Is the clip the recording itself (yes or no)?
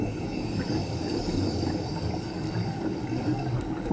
no